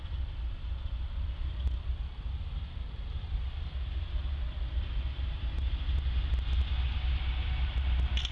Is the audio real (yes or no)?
no